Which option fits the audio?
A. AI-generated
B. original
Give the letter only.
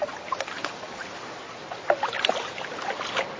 B